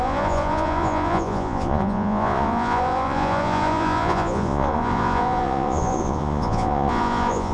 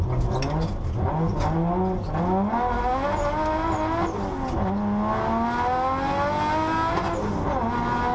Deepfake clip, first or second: first